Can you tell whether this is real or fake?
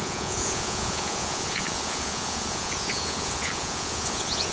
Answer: fake